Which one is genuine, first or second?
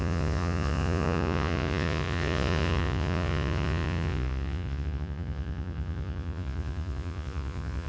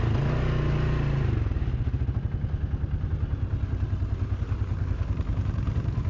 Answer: second